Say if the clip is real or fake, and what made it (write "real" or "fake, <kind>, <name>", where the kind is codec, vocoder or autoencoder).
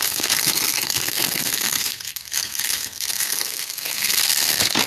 fake, codec, SNAC